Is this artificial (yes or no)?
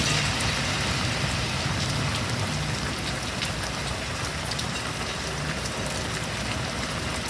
no